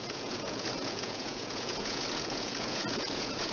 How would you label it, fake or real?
fake